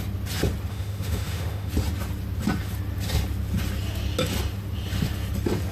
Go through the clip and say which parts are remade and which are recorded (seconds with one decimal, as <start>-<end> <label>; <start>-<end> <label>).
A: 0.0-0.7 recorded; 0.7-1.7 remade; 1.7-5.7 recorded